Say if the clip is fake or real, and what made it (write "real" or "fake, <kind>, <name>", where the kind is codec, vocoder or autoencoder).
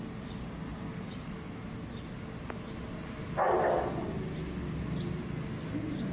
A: real